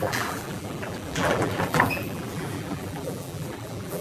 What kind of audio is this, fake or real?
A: fake